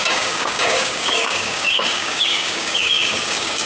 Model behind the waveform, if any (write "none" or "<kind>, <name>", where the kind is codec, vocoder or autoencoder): codec, DAC